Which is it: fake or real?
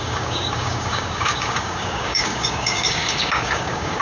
fake